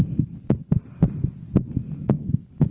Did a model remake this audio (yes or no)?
no